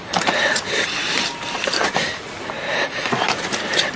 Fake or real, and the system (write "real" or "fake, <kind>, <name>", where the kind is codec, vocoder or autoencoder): fake, vocoder, BigVGAN v2